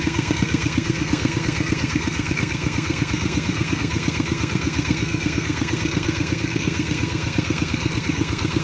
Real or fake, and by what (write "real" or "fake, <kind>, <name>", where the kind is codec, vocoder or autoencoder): fake, codec, SNAC